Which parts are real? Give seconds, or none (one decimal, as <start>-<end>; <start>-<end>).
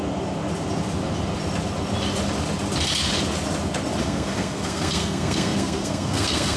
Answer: 0.0-4.0